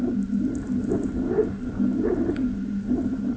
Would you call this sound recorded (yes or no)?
yes